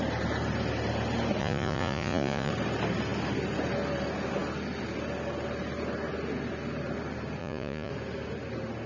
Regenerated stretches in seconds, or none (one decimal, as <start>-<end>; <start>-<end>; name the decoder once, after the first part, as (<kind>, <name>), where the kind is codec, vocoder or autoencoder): 1.4-2.5 (vocoder, Vocos); 7.4-7.9